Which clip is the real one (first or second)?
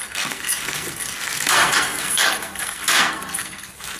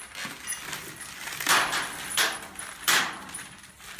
second